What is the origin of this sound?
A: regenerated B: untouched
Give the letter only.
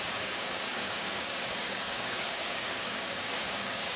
A